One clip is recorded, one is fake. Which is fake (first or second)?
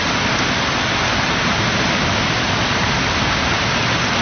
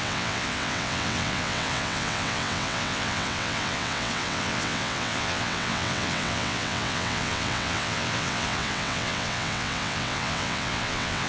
second